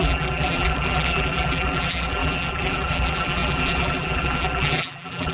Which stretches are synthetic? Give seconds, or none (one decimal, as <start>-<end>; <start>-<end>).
0.0-5.3